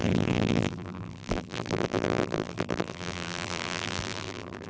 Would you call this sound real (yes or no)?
no